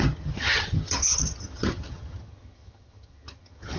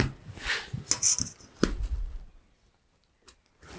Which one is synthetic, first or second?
first